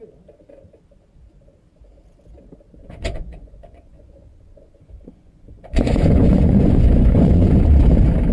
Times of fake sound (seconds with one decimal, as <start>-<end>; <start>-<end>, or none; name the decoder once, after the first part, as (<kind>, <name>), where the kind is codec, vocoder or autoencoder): 2.8-7.5 (vocoder, Vocos)

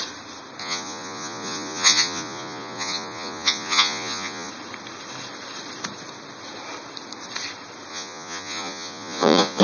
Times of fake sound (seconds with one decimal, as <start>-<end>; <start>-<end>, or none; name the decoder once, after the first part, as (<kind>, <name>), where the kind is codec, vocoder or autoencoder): 0.6-4.5 (vocoder, Vocos); 7.9-9.6

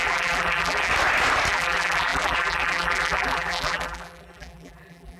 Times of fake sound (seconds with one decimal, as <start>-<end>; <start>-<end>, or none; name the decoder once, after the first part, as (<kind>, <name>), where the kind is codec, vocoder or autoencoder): 0.0-0.9 (vocoder, BigVGAN v2); 1.5-5.2